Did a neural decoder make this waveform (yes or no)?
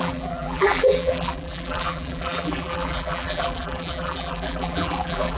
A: yes